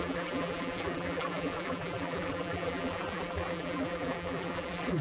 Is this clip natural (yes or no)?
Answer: no